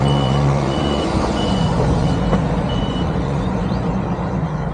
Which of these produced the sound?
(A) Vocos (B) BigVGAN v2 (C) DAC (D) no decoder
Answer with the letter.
A